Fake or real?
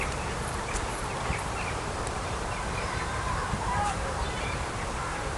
fake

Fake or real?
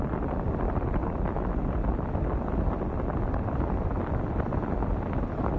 fake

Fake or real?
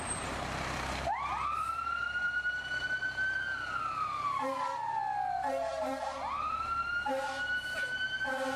fake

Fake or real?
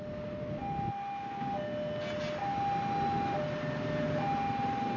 real